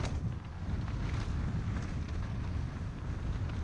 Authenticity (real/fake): real